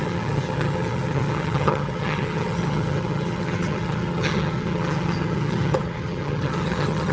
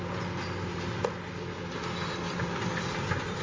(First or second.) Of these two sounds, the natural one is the second